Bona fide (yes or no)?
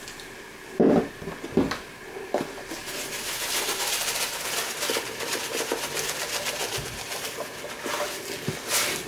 yes